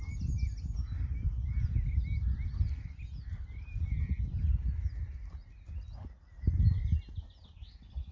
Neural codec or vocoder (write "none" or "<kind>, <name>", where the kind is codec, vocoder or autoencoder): none